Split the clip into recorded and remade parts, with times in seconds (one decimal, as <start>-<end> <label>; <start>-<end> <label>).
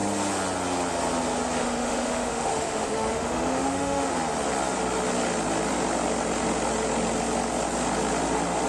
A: 0.0-1.6 recorded; 1.6-4.1 remade; 4.1-8.7 recorded